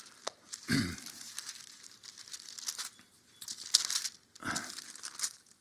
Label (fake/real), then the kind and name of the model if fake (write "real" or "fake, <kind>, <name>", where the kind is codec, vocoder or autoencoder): real